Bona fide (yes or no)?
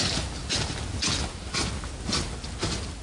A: yes